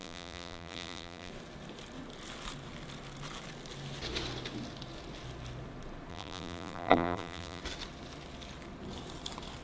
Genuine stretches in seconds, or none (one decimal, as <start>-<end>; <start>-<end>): 1.3-6.1; 7.6-9.6